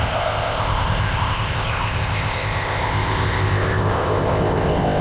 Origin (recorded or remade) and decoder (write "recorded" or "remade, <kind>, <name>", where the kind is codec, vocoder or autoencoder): remade, codec, ZipCodec